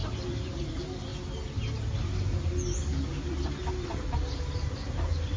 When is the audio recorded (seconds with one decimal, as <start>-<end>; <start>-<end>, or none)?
0.0-5.4